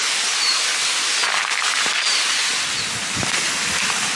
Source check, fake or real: real